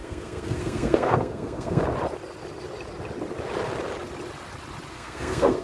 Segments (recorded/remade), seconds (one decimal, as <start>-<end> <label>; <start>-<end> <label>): 0.0-1.8 remade; 1.8-4.9 recorded; 4.9-5.6 remade